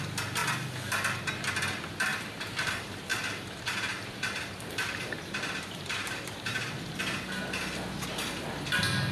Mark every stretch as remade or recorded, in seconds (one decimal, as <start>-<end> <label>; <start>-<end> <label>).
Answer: 0.0-2.1 recorded; 2.1-2.7 remade; 2.7-3.1 recorded; 3.1-7.0 remade; 7.0-9.1 recorded